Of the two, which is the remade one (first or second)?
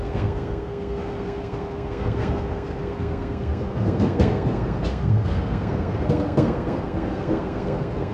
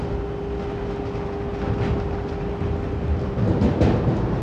first